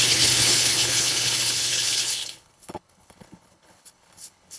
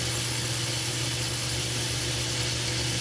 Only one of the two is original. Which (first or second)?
second